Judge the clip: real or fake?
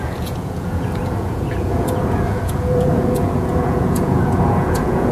fake